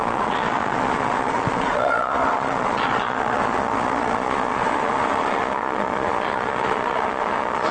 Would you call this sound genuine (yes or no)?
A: no